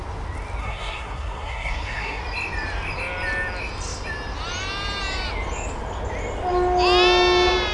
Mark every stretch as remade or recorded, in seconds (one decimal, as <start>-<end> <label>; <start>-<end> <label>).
0.0-0.6 recorded; 0.6-2.2 remade; 2.2-7.7 recorded